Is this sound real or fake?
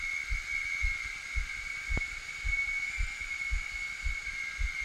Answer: real